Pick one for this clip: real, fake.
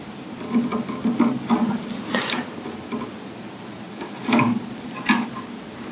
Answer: real